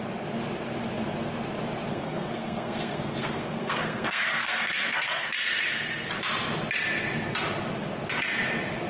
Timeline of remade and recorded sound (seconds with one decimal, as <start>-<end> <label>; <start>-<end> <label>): 0.0-1.9 recorded; 1.9-5.3 remade; 5.3-8.9 recorded